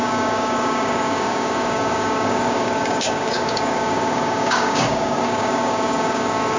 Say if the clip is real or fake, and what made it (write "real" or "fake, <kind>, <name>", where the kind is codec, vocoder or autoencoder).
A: fake, codec, DAC